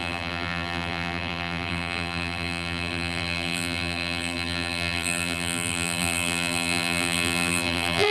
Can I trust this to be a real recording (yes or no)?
no